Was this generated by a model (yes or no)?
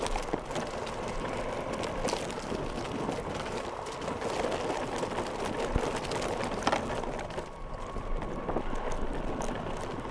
no